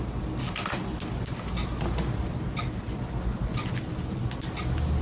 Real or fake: real